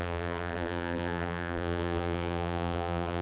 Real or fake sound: fake